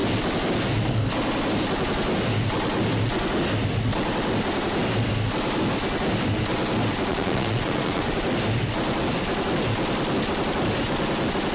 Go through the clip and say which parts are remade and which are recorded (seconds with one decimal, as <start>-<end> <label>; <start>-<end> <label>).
0.0-7.1 recorded; 7.1-8.1 remade; 8.1-11.5 recorded